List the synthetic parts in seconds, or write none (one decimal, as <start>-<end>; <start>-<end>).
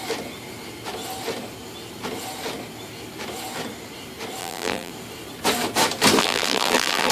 4.4-4.9; 6.2-7.1